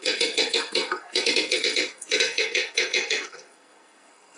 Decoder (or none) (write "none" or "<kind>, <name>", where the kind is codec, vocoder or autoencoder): codec, SNAC